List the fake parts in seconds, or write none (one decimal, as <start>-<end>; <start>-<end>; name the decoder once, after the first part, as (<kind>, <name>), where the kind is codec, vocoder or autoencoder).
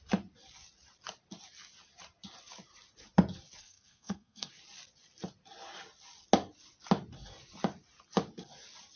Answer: 3.6-4.5 (codec, SNAC)